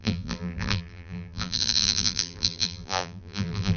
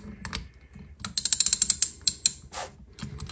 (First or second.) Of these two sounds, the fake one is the first